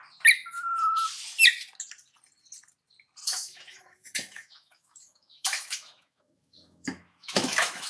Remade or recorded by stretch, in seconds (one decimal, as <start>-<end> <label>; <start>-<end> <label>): 0.0-3.2 recorded; 3.2-7.9 remade